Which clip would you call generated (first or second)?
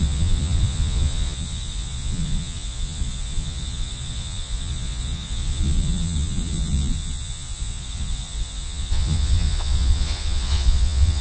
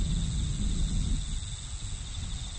first